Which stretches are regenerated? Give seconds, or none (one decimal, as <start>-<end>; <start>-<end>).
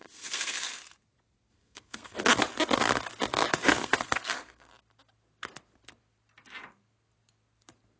0.0-0.8; 1.5-2.2; 3.8-4.7